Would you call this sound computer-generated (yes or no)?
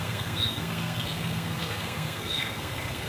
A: yes